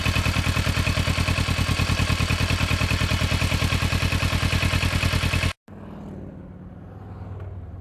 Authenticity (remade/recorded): recorded